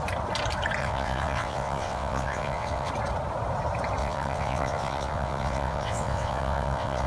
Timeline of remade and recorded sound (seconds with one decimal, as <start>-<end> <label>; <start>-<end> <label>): 0.0-0.8 recorded; 0.8-2.9 remade; 2.9-4.0 recorded; 4.0-7.1 remade